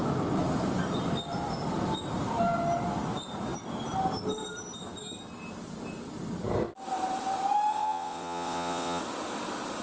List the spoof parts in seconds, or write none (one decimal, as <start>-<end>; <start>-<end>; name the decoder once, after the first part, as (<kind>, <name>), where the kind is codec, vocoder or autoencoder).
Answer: 7.7-9.0 (vocoder, WaveNeXt)